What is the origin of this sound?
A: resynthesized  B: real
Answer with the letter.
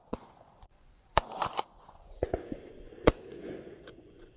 A